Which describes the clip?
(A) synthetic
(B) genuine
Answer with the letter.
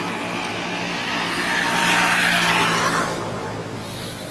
B